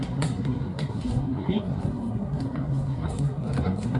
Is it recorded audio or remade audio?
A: remade